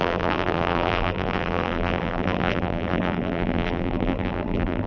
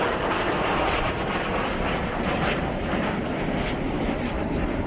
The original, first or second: second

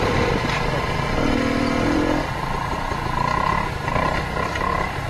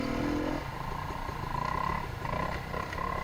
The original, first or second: second